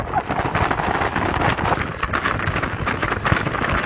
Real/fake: real